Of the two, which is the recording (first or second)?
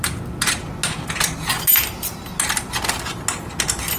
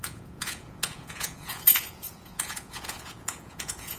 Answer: first